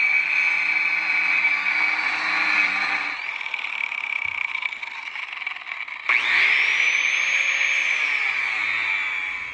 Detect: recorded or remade recorded